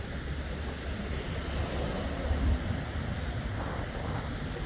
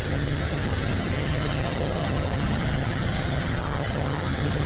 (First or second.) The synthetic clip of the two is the second